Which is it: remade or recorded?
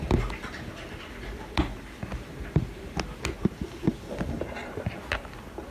recorded